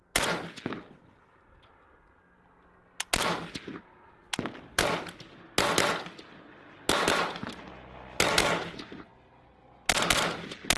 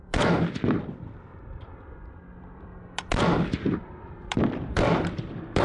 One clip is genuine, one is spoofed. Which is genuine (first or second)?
first